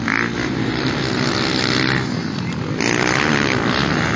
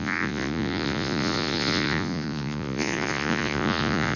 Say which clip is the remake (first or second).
second